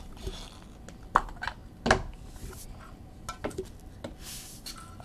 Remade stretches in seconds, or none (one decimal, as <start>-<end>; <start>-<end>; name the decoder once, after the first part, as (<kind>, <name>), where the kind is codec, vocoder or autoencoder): none

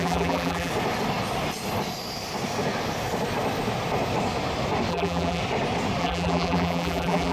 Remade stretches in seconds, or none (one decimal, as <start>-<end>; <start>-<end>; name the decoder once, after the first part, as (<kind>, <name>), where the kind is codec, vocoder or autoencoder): 0.0-0.7 (vocoder, BigVGAN v2); 4.9-5.4; 6.0-7.3

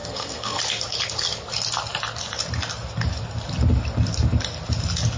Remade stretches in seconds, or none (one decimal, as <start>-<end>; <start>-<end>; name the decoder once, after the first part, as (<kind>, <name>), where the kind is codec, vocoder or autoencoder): 0.0-0.6 (codec, SNAC)

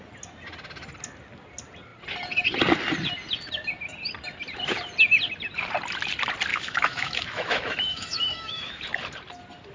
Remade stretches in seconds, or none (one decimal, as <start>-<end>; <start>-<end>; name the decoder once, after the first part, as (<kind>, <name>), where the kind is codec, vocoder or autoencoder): 6.5-8.8 (autoencoder, DAC-VAE)